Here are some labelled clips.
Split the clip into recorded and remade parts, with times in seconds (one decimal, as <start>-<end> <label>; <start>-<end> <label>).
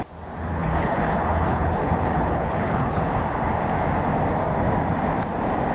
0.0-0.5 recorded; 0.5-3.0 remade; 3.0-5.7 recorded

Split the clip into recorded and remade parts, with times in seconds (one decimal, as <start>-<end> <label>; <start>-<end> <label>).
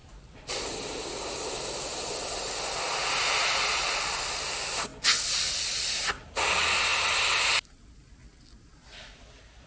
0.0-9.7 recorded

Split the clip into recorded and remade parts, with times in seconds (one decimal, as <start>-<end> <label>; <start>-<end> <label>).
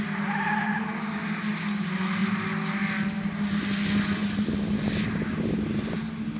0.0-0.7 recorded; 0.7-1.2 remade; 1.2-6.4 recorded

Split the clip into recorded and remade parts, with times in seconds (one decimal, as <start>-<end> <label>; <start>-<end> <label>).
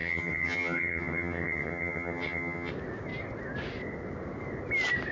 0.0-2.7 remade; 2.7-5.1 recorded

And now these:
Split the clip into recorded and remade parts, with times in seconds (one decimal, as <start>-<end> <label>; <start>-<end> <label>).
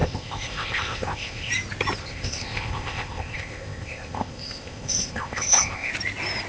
0.0-1.5 remade; 1.5-2.0 recorded; 2.0-5.9 remade; 5.9-6.5 recorded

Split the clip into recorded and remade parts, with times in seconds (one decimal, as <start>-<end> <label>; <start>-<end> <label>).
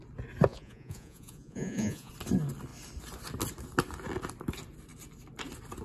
0.0-0.5 recorded; 0.5-2.1 remade; 2.1-5.8 recorded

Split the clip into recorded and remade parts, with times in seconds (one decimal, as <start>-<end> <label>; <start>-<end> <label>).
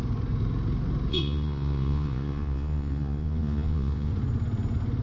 0.0-1.1 recorded; 1.1-4.1 remade; 4.1-5.0 recorded